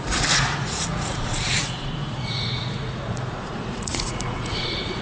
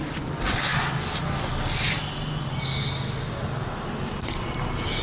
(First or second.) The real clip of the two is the second